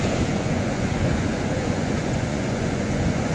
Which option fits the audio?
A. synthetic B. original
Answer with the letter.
A